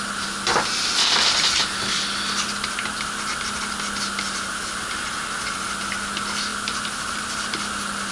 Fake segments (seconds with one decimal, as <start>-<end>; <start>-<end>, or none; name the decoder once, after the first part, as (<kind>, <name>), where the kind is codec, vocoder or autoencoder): none